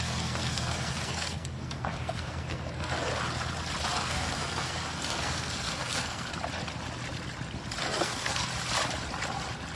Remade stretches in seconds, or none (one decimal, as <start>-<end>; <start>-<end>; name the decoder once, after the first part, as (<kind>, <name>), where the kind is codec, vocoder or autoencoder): 0.0-3.1 (codec, SNAC); 3.9-6.3; 7.8-8.5